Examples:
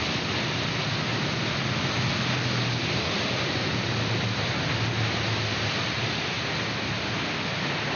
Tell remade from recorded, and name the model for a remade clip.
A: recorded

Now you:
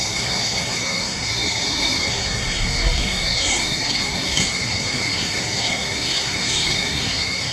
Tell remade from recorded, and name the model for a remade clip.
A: remade, codec, SNAC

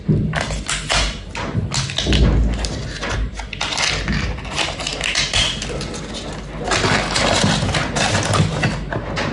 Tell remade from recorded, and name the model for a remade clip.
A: recorded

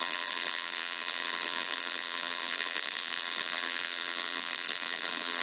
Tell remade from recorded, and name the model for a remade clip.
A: remade, vocoder, BigVGAN v2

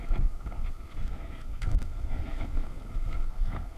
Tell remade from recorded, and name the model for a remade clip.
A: remade, codec, SNAC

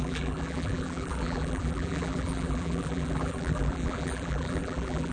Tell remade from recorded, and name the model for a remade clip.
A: remade, vocoder, BigVGAN v2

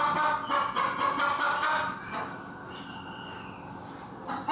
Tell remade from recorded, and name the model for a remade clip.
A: recorded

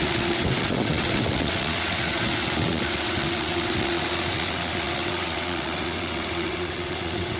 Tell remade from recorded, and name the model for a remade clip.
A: remade, vocoder, WaveNeXt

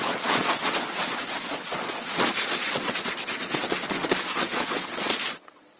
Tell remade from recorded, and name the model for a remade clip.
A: remade, vocoder, Vocos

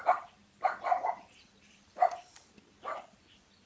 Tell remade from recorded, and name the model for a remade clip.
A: recorded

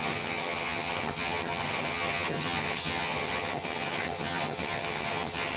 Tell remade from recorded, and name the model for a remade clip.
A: remade, vocoder, HiFi-GAN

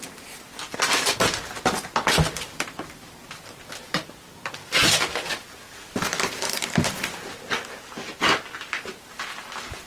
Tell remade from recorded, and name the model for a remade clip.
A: recorded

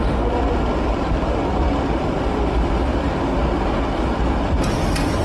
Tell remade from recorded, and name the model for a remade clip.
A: recorded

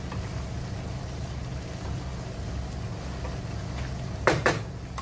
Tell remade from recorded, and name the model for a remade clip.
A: recorded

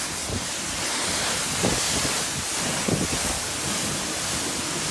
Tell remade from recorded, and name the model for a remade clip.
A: recorded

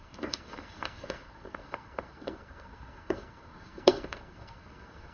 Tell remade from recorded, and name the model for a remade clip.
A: remade, codec, SNAC